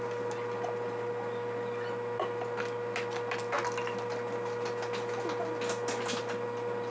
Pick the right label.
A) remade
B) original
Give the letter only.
B